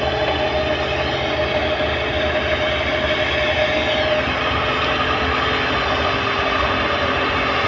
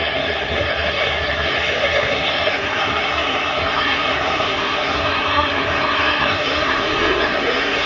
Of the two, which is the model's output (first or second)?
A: second